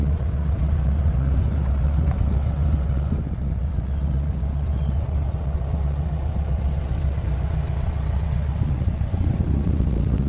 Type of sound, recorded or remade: remade